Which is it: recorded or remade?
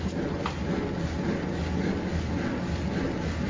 recorded